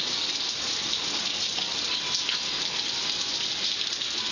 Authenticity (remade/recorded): recorded